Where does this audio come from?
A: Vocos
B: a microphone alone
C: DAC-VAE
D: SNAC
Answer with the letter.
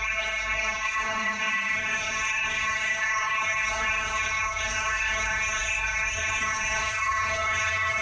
D